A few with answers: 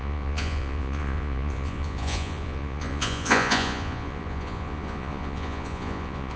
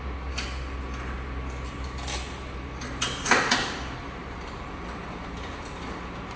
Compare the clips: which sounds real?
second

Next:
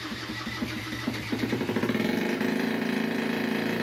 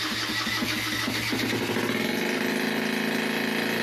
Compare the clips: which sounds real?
second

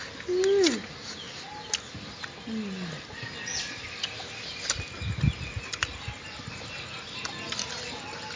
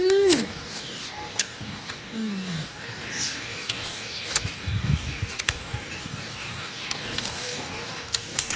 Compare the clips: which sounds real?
first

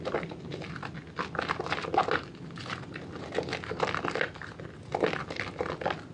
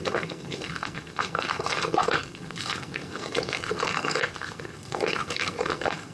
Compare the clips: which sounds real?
first